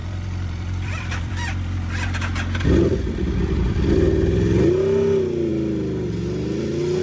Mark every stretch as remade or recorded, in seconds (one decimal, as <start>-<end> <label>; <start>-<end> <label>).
0.0-1.3 remade; 1.3-3.4 recorded; 3.4-4.8 remade; 4.8-7.0 recorded